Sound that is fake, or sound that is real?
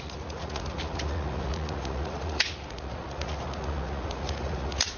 fake